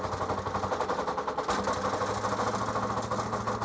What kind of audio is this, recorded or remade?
recorded